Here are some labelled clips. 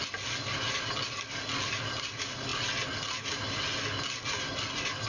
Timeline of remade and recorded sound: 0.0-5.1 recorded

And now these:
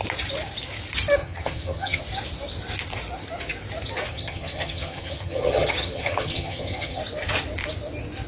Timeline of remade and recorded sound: 0.0-1.2 recorded; 1.2-2.0 remade; 2.0-4.1 recorded; 4.1-7.0 remade; 7.0-8.3 recorded

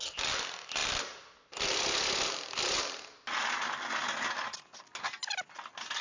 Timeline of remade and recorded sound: 0.0-6.0 recorded

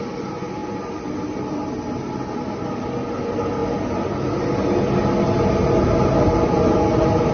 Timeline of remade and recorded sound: 0.0-7.3 recorded

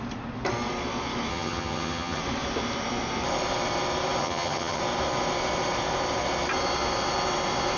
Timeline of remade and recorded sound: 0.0-1.3 recorded; 1.3-2.2 remade; 2.2-4.2 recorded; 4.2-4.8 remade; 4.8-7.8 recorded

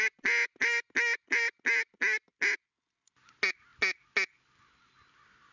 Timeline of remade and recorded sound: 0.0-5.5 recorded

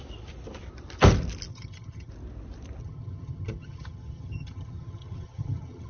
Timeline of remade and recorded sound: 0.0-1.5 recorded; 1.5-2.1 remade; 2.1-2.8 recorded; 2.8-5.9 remade

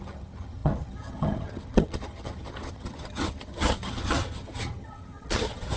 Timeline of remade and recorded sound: 0.0-5.8 remade